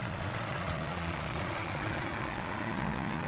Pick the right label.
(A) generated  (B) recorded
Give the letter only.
A